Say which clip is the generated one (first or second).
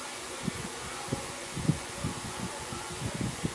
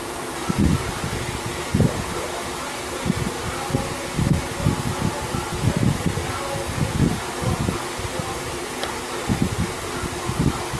first